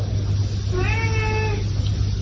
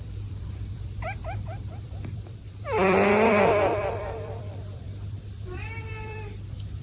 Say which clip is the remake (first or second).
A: second